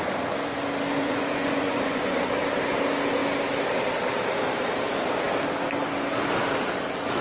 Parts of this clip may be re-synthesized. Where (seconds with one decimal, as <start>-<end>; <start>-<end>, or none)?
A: 1.0-2.2

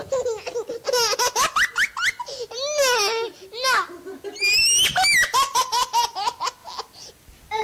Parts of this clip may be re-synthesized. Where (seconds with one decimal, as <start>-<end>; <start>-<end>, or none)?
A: none

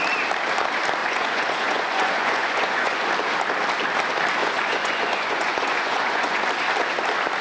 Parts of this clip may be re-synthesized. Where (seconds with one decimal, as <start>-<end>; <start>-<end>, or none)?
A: 1.0-3.1; 4.4-6.5

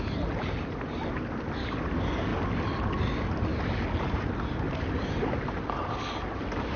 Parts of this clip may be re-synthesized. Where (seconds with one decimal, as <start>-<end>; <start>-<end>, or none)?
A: none

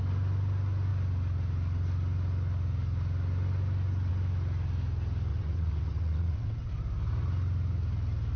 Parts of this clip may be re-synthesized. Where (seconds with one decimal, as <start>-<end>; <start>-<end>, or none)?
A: 5.3-6.7

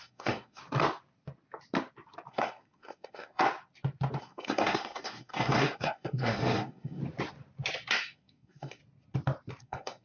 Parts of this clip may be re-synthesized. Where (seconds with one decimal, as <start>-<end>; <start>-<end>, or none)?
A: 0.0-0.6; 2.3-3.4; 4.2-7.0; 7.9-8.8; 9.6-10.0

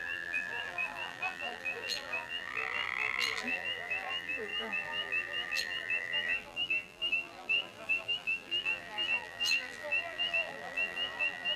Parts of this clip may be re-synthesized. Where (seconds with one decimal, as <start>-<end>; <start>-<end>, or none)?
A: 0.0-11.6